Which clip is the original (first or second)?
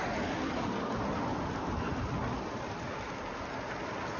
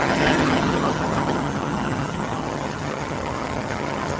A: first